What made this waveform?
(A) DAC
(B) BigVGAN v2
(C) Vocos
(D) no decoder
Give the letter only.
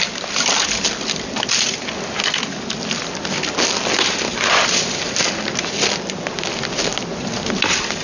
D